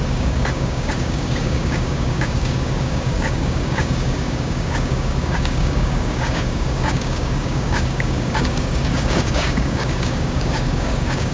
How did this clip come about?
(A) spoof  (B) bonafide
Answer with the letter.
A